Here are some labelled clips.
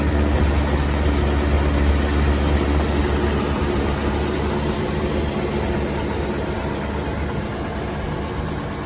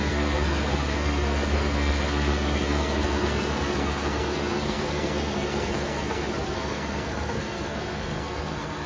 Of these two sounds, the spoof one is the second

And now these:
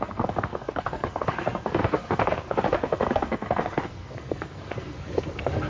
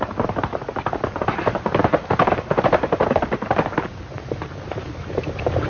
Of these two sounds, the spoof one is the first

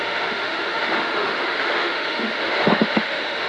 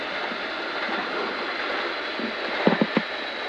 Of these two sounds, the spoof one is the first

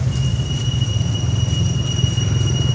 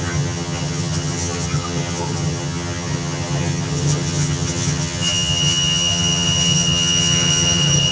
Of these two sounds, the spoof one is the second